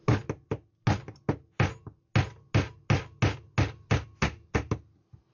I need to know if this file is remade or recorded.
recorded